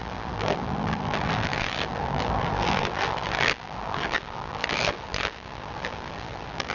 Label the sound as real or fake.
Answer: fake